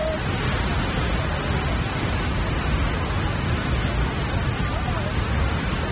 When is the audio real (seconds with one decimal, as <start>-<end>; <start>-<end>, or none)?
0.0-5.9